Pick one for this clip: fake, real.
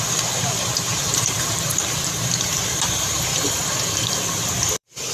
fake